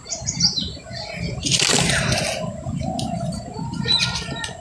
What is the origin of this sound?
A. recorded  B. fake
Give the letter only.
A